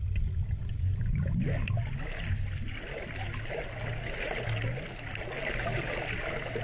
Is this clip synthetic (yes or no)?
no